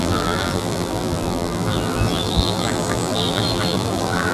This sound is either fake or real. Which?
fake